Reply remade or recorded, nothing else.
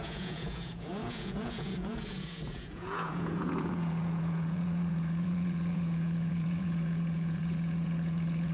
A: remade